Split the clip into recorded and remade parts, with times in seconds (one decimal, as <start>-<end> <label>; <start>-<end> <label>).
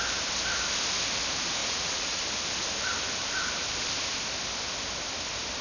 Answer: 0.0-1.6 recorded; 1.6-2.2 remade; 2.2-5.6 recorded